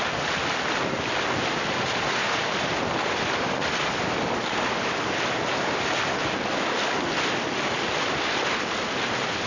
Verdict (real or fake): real